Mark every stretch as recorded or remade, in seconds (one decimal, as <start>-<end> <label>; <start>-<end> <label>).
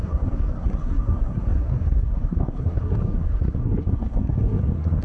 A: 0.0-5.0 remade